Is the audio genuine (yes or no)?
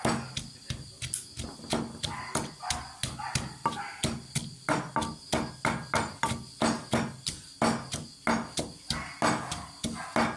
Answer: yes